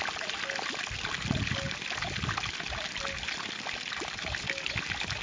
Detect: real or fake real